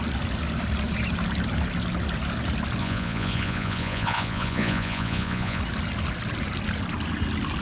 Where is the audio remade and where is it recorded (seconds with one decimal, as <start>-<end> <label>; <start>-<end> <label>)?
0.0-2.8 recorded; 2.8-5.6 remade; 5.6-7.6 recorded